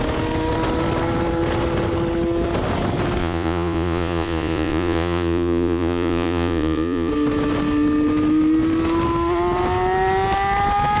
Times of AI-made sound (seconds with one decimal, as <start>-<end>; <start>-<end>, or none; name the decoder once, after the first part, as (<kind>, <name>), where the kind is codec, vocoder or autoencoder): 3.2-7.1 (vocoder, Vocos)